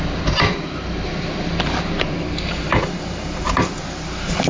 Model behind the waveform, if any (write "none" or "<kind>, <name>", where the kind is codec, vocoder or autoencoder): none